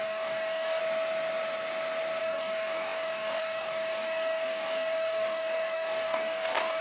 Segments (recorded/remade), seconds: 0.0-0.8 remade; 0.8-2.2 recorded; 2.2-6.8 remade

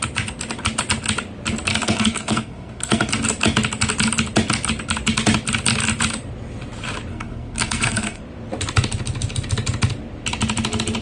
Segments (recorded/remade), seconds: 0.0-1.7 recorded; 1.7-3.1 remade; 3.1-7.1 recorded; 7.1-8.2 remade; 8.2-11.0 recorded